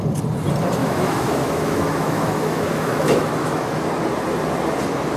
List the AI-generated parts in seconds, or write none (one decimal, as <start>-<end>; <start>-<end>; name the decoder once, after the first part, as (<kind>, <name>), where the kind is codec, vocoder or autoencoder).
0.8-3.9 (autoencoder, DAC-VAE)